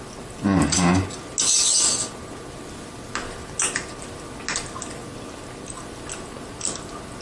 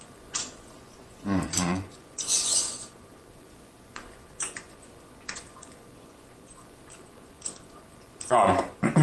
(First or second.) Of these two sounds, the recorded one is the first